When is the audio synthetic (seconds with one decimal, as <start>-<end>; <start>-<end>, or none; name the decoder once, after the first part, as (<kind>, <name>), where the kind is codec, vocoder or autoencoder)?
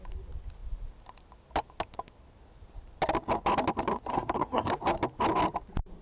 4.1-4.7 (codec, SNAC)